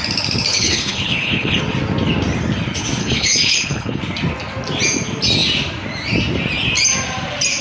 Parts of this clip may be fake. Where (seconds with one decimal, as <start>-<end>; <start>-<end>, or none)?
0.5-1.6; 3.0-4.0